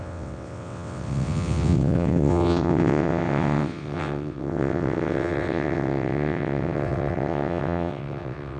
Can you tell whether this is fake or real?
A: fake